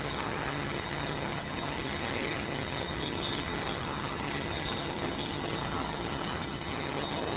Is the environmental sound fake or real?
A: fake